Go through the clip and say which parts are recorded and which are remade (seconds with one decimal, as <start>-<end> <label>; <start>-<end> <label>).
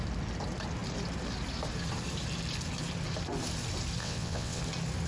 0.0-4.0 recorded; 4.0-4.6 remade; 4.6-5.1 recorded